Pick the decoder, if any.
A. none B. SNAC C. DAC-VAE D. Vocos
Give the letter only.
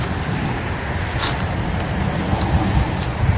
A